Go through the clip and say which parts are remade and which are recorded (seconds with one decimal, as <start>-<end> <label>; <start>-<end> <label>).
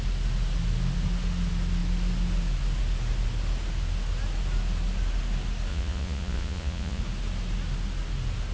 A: 0.0-5.7 recorded; 5.7-7.0 remade; 7.0-8.5 recorded